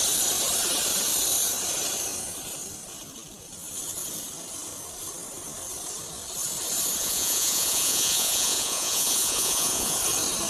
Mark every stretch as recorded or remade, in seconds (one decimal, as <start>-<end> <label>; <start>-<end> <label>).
0.0-7.0 recorded; 7.0-10.0 remade; 10.0-10.5 recorded